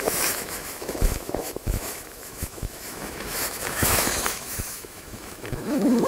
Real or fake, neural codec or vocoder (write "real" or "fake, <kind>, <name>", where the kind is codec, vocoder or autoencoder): fake, autoencoder, DAC-VAE